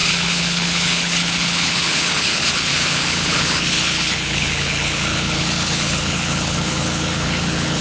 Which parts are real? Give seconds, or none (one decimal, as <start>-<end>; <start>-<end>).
none